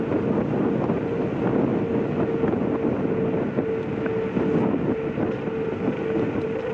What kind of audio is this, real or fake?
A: real